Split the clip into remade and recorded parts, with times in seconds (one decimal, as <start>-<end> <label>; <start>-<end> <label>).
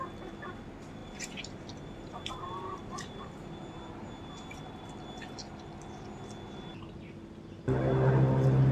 0.0-1.0 recorded; 1.0-4.1 remade; 4.1-8.7 recorded